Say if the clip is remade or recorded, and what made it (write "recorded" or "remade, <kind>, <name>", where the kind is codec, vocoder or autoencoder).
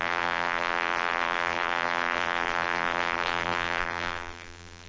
remade, vocoder, BigVGAN v2